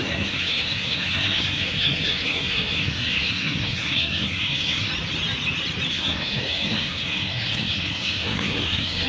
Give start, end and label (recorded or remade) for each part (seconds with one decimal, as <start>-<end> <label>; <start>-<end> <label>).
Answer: 0.0-4.9 remade; 4.9-5.9 recorded; 5.9-9.1 remade